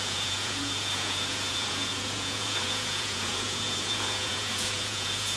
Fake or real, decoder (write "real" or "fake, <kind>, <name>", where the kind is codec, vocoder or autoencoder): fake, vocoder, Vocos